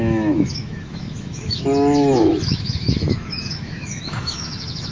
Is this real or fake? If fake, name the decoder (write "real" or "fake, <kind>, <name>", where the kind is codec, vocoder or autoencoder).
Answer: fake, autoencoder, DAC-VAE